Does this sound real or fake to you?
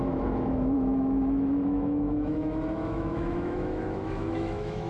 fake